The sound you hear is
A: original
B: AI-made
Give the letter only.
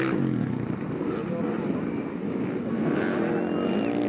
A